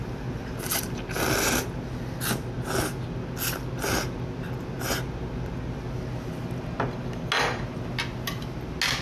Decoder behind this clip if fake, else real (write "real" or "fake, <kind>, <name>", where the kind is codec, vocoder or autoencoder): real